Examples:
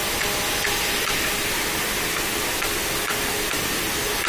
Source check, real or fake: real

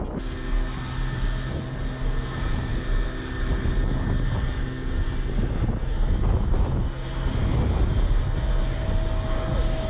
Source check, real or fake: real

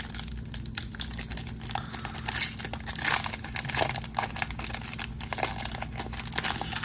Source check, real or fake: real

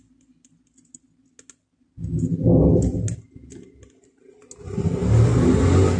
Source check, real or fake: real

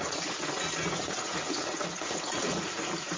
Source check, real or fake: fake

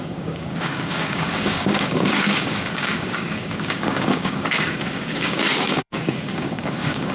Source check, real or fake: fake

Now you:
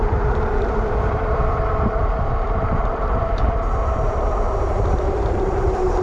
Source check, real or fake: fake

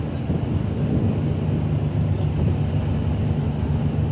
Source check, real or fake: real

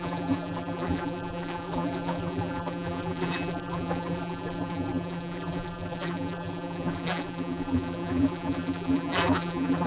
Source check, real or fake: fake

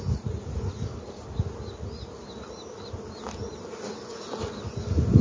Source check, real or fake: real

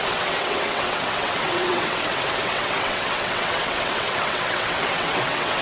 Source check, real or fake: fake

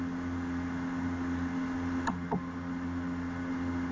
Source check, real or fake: real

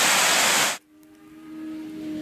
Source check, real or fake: real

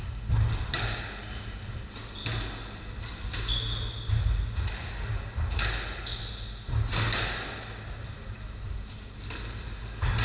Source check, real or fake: real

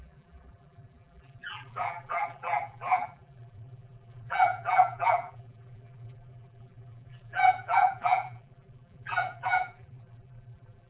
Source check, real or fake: fake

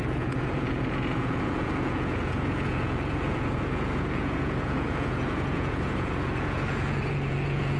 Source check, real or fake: fake